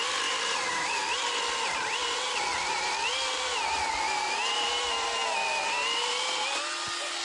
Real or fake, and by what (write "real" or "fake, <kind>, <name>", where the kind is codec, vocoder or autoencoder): real